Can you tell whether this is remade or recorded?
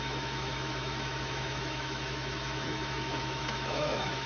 remade